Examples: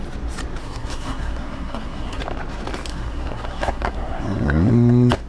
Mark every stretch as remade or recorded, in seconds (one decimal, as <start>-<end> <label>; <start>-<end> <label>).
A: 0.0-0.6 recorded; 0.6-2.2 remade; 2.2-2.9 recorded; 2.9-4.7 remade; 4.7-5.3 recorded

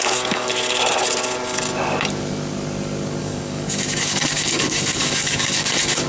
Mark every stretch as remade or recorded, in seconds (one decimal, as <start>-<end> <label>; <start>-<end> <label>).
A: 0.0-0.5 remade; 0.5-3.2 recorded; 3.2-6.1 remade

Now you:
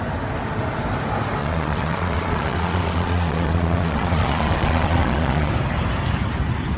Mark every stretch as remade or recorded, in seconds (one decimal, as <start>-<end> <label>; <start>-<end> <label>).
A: 0.0-1.4 recorded; 1.4-5.5 remade; 5.5-6.8 recorded

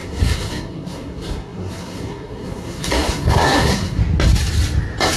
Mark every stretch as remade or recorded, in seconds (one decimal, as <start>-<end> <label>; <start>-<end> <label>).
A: 0.0-4.0 remade; 4.0-5.2 recorded

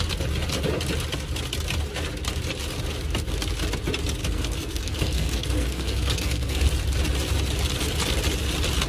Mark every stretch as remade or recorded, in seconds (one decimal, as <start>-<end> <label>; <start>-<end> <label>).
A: 0.0-4.2 recorded; 4.2-6.7 remade; 6.7-8.9 recorded

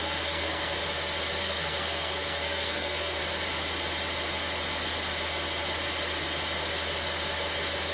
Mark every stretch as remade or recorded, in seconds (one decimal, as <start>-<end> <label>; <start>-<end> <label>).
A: 0.0-0.8 remade; 0.8-1.4 recorded; 1.4-3.2 remade; 3.2-7.9 recorded

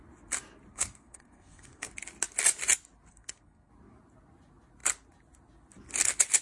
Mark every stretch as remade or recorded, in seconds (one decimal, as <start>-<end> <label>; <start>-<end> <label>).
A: 0.0-0.7 recorded; 0.7-1.9 remade; 1.9-3.1 recorded; 3.1-3.7 remade; 3.7-6.4 recorded